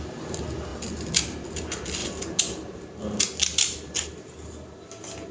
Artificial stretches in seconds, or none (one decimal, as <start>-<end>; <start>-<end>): none